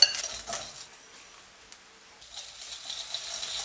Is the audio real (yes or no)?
yes